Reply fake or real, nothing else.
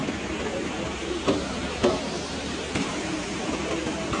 fake